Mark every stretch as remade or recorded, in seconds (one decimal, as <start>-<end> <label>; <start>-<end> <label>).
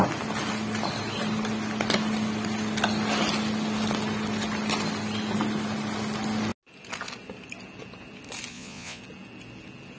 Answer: 0.0-8.5 recorded; 8.5-9.0 remade; 9.0-10.0 recorded